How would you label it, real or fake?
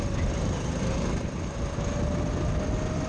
real